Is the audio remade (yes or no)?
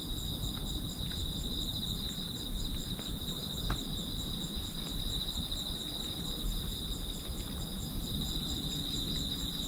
no